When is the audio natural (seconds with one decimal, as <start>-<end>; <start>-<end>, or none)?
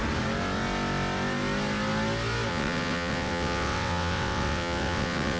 0.0-2.5